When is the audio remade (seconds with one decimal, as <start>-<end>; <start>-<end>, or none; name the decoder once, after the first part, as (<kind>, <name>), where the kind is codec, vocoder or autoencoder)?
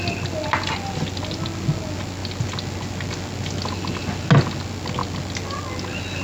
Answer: none